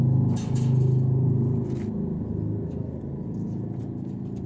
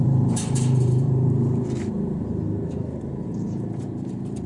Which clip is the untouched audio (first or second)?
first